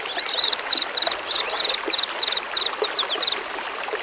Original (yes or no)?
no